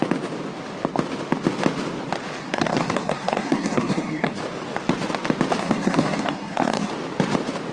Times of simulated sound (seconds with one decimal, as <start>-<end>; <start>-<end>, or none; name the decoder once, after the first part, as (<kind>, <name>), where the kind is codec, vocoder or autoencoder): 2.4-4.4 (codec, SNAC); 5.6-6.9